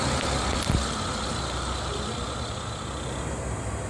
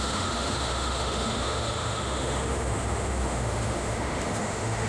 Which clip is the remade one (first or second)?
second